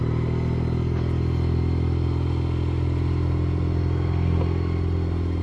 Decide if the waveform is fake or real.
real